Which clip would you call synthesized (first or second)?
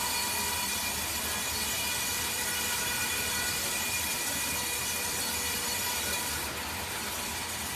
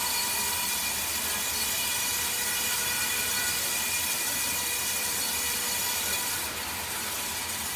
second